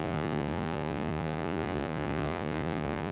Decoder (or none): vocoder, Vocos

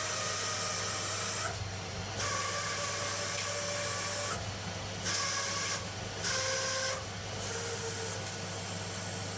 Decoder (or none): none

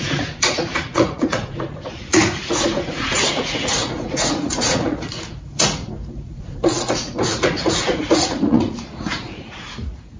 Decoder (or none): vocoder, Vocos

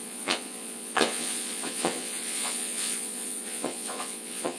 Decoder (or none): vocoder, Vocos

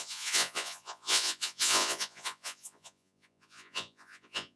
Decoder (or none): vocoder, Vocos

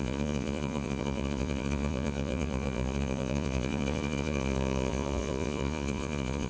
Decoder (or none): vocoder, Vocos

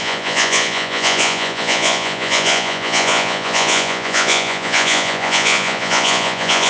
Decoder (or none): vocoder, Vocos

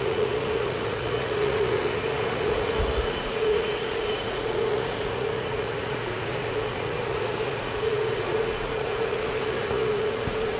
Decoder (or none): vocoder, Vocos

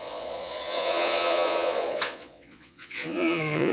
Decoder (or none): vocoder, Vocos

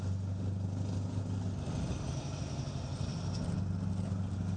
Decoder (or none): none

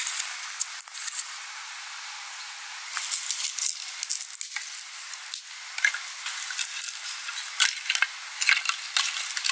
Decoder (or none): none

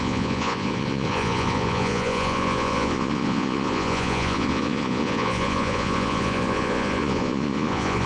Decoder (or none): vocoder, Vocos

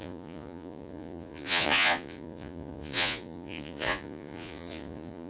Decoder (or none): vocoder, Vocos